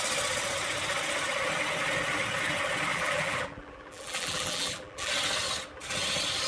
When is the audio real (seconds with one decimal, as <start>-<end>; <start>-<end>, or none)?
0.0-2.9; 5.1-6.5